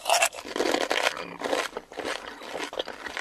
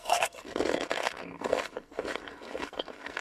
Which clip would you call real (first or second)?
first